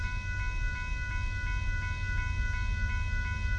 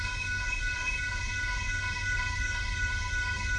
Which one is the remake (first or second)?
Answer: second